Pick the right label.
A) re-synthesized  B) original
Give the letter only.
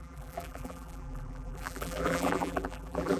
A